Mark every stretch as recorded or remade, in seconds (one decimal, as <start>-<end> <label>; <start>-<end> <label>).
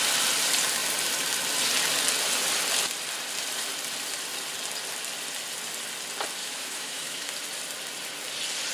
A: 0.0-6.4 recorded; 6.4-7.3 remade; 7.3-8.7 recorded